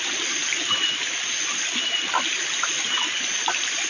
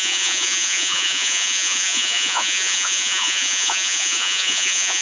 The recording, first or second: first